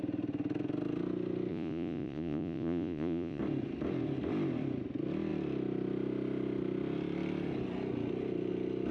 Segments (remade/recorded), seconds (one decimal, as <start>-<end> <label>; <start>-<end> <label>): 0.0-1.5 recorded; 1.5-3.4 remade; 3.4-8.9 recorded